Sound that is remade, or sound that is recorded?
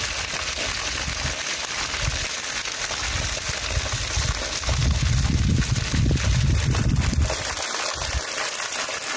recorded